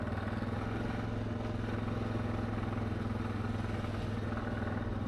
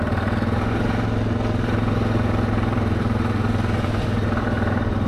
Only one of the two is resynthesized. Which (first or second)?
second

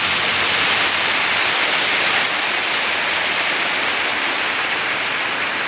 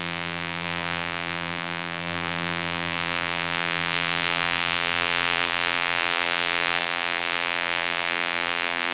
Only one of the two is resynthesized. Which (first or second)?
second